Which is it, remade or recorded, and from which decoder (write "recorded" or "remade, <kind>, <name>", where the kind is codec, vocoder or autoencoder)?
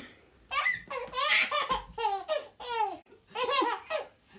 recorded